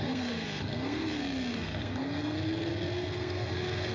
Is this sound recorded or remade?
remade